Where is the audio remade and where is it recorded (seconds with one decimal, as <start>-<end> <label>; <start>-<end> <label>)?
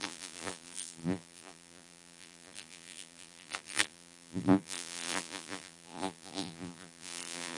0.0-7.6 remade